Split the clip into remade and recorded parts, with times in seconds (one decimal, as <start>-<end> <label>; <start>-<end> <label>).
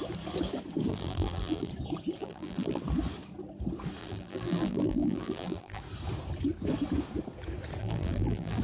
0.0-0.9 recorded; 0.9-1.7 remade; 1.7-2.2 recorded; 2.2-2.8 remade; 2.8-4.0 recorded; 4.0-5.8 remade; 5.8-7.8 recorded; 7.8-8.6 remade